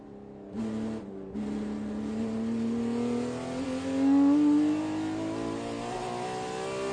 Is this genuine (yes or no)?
yes